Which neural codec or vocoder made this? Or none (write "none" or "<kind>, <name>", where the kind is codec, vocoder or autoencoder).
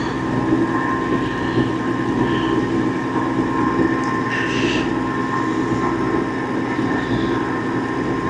none